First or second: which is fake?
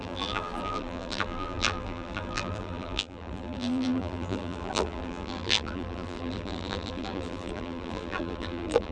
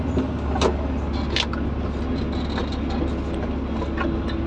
first